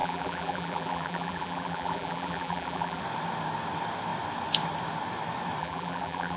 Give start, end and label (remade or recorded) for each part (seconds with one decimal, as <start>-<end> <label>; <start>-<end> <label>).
0.0-3.0 remade; 3.0-5.6 recorded; 5.6-6.4 remade